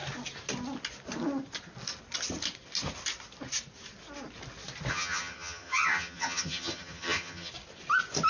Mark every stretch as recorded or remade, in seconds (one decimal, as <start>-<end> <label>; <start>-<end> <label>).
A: 0.0-4.9 recorded; 4.9-7.5 remade; 7.5-8.3 recorded